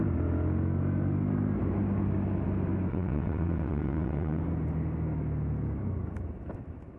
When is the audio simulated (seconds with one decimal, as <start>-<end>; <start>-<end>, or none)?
2.9-4.4